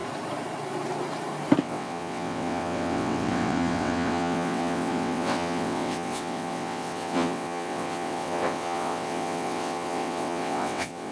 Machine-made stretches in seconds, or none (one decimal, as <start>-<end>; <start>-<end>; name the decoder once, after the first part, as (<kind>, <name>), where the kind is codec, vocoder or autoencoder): 1.6-11.1 (vocoder, WaveNeXt)